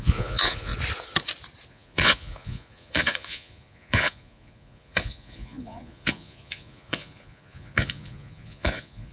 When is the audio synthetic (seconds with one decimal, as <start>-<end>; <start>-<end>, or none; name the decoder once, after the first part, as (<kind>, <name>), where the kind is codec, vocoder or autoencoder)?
0.0-0.7 (vocoder, Vocos); 1.7-9.1